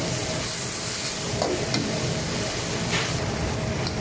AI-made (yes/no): no